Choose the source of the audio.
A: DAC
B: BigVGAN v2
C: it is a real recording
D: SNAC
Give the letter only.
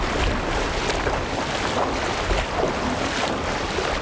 C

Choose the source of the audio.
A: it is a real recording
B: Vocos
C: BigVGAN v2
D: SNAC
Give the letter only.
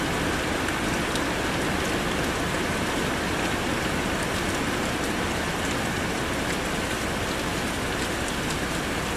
A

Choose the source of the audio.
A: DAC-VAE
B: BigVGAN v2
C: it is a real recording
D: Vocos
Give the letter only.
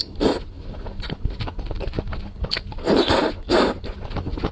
C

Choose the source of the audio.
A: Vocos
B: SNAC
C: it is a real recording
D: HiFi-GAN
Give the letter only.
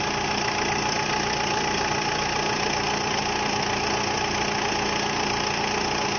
C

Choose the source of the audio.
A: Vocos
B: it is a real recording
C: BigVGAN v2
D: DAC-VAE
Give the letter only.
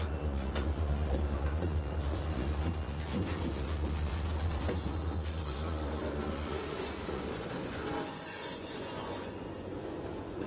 A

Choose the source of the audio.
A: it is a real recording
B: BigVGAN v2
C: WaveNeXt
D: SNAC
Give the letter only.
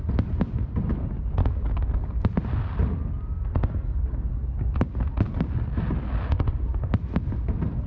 A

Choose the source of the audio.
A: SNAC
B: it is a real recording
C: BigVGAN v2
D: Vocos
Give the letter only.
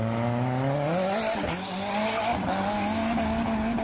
B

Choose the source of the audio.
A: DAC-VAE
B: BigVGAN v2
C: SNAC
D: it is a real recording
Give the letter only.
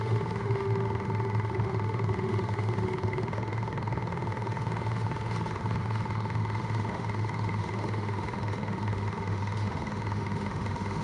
A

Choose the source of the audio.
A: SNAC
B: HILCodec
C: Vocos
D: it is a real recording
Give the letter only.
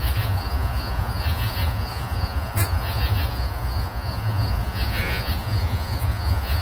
C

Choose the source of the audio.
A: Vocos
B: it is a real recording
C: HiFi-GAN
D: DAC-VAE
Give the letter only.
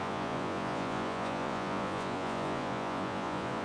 A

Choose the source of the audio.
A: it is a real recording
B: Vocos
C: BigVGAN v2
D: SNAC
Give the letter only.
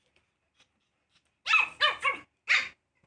A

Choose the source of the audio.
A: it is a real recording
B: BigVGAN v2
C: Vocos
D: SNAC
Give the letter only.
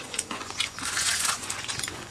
C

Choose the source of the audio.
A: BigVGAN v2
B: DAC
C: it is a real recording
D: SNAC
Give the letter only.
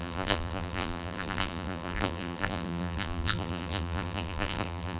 A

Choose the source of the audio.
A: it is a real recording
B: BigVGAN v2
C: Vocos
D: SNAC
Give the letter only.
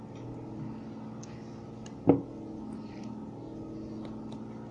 A